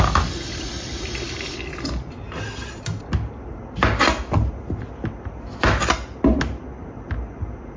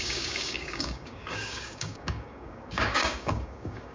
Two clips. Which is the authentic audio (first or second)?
first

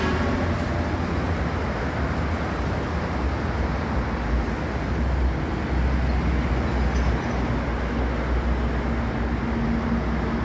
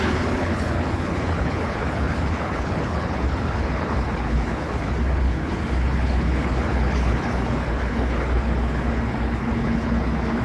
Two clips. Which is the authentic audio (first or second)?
first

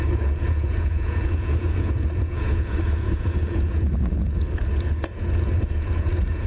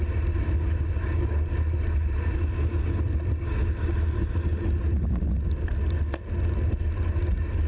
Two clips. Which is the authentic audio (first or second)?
second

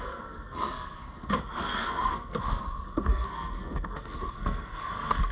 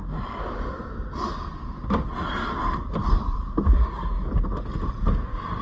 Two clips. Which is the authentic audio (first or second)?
second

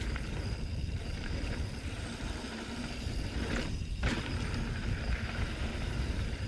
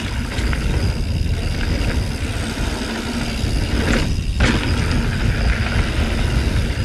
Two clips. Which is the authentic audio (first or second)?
second